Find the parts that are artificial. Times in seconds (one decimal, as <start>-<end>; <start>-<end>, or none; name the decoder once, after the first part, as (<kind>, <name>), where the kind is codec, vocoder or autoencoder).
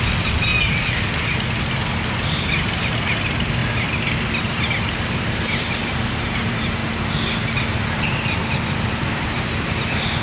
0.0-0.5 (vocoder, BigVGAN v2); 2.0-3.6; 4.4-6.8; 7.8-10.2